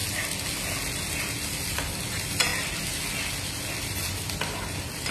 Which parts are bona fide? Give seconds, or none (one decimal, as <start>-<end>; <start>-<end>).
0.0-1.1; 2.5-3.7